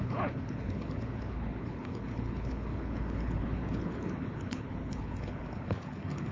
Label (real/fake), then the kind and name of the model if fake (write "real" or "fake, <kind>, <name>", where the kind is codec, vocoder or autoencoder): fake, codec, HILCodec